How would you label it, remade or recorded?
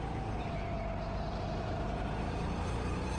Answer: recorded